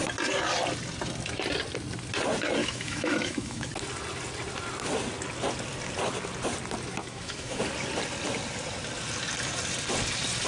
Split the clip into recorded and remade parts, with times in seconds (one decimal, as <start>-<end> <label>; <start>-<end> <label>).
0.0-2.6 recorded; 2.6-3.7 remade; 3.7-7.0 recorded; 7.0-7.6 remade; 7.6-10.5 recorded